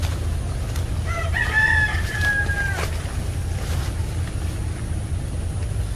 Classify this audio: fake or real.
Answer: real